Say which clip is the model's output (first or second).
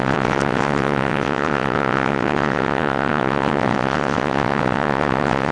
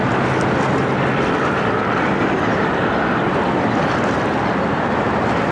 first